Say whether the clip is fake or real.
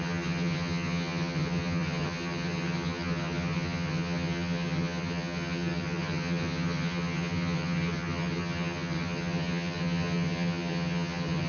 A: fake